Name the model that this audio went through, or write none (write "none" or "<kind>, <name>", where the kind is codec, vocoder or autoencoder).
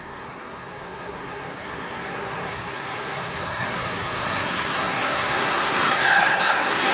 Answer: codec, SNAC